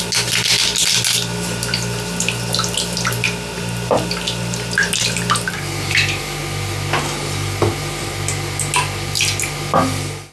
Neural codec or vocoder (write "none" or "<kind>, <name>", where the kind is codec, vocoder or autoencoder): none